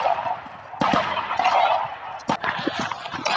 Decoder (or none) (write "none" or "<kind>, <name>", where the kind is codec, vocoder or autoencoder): none